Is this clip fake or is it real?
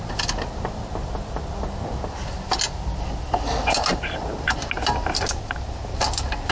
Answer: real